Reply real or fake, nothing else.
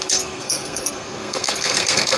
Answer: fake